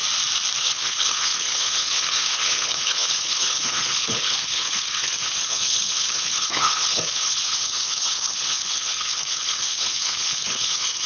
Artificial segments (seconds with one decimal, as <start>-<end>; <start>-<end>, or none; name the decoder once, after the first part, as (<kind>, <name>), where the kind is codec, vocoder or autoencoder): 0.6-11.1 (codec, HILCodec)